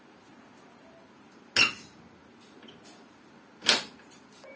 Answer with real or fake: real